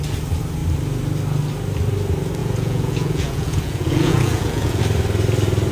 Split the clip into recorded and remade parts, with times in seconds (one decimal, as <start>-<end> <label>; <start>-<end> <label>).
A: 0.0-2.4 recorded; 2.4-4.8 remade; 4.8-5.7 recorded